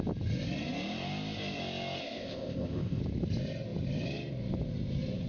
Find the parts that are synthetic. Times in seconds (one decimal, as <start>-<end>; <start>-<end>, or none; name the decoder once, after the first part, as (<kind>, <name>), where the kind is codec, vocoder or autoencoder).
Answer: 2.0-3.0 (codec, ZipCodec)

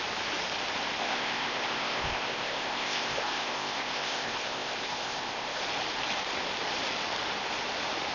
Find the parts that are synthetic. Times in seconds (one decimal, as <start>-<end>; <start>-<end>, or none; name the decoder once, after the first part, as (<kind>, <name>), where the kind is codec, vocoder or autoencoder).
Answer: 1.0-5.6 (codec, ZipCodec)

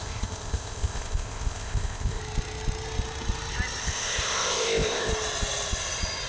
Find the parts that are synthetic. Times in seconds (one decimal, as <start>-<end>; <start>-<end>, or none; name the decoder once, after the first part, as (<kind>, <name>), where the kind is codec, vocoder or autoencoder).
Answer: 0.0-2.2 (codec, ZipCodec); 3.8-5.1

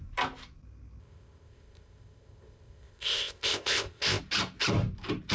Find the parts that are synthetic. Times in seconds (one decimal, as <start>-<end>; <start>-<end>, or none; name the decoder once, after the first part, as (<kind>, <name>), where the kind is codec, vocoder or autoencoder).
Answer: 1.0-4.2 (codec, ZipCodec)

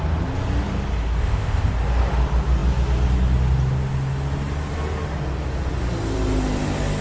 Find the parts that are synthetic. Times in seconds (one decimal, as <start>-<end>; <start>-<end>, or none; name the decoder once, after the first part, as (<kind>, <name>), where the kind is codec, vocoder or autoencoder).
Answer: 1.2-1.7 (codec, ZipCodec)